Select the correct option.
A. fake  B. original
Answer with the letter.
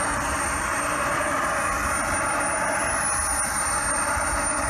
B